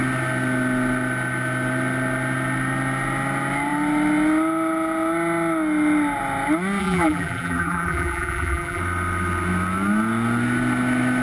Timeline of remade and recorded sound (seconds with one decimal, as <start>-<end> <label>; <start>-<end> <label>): 0.0-6.8 recorded; 6.8-8.8 remade; 8.8-11.2 recorded